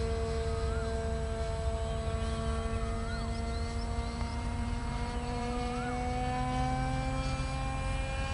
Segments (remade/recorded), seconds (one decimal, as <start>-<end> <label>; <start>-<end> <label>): 0.0-4.3 recorded; 4.3-5.9 remade; 5.9-8.3 recorded